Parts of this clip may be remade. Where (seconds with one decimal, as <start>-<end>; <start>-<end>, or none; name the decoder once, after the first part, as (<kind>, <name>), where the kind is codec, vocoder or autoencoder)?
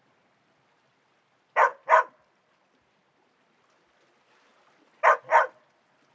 none